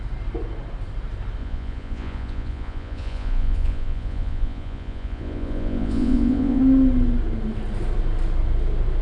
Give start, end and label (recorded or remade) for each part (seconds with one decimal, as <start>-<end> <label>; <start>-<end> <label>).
0.0-1.4 recorded; 1.4-6.6 remade; 6.6-9.0 recorded